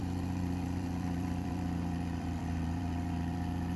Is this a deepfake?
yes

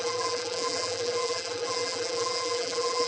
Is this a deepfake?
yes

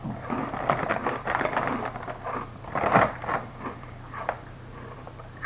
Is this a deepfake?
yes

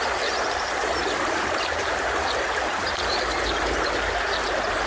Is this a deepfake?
yes